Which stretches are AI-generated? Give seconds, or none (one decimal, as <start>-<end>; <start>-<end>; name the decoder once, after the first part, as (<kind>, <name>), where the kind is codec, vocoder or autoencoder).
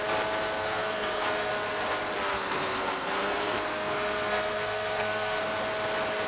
0.6-1.5 (codec, SNAC); 2.3-5.4